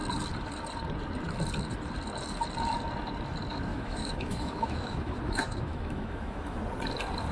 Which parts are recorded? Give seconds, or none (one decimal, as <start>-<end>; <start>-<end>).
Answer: 0.0-3.7; 6.6-7.3